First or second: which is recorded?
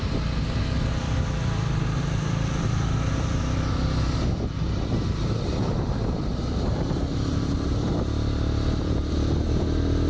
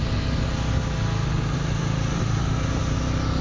second